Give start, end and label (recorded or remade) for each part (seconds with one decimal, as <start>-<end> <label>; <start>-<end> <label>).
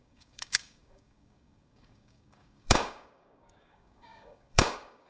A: 0.0-5.1 remade